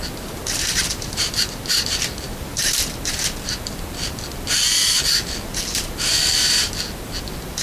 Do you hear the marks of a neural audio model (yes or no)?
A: yes